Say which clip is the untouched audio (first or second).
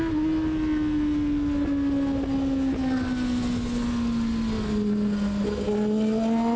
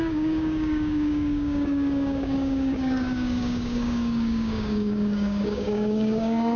first